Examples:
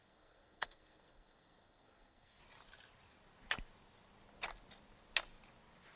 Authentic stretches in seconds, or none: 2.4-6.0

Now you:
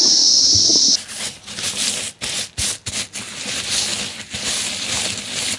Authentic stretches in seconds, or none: 0.0-5.6

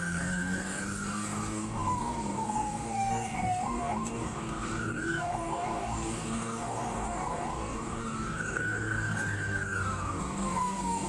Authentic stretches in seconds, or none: none